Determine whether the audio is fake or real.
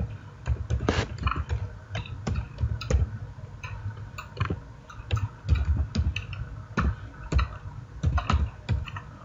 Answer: real